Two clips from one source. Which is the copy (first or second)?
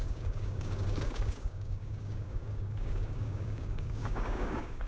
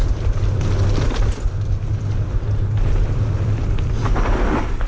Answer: first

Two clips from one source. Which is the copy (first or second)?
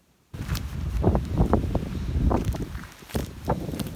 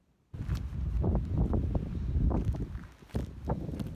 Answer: first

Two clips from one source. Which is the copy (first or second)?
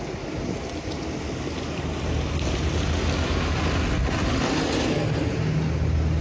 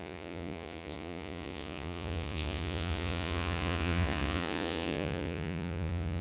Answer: second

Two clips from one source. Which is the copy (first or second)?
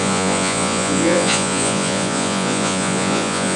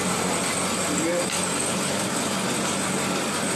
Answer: first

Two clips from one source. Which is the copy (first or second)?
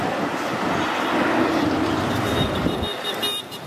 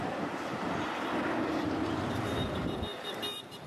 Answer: second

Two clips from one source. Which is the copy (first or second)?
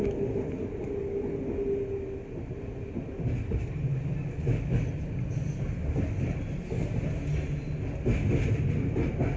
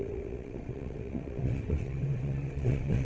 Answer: second